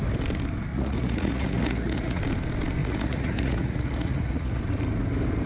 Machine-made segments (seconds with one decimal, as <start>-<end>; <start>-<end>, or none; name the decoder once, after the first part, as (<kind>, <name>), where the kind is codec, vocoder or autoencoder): 0.7-2.2 (vocoder, Vocos); 2.8-4.6